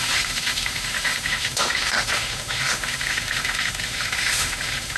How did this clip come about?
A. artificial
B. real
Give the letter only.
A